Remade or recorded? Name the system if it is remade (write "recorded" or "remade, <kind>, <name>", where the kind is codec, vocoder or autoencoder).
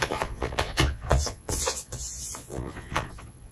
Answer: remade, vocoder, Vocos